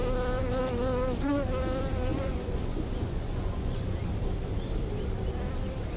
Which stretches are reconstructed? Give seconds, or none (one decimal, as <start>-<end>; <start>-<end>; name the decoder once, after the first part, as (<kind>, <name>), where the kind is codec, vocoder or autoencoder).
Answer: 2.1-3.9 (vocoder, Vocos)